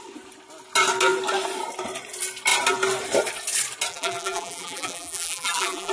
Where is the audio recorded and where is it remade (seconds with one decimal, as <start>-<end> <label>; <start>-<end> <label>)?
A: 0.0-3.9 recorded; 3.9-5.9 remade